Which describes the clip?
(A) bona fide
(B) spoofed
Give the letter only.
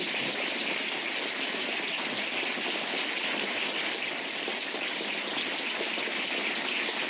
A